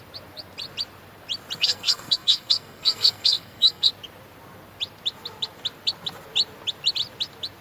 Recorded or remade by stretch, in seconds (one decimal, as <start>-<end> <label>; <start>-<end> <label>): 0.0-1.6 recorded; 1.6-3.9 remade; 3.9-7.6 recorded